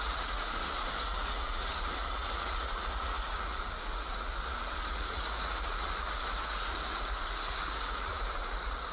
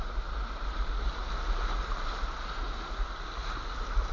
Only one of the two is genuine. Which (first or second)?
second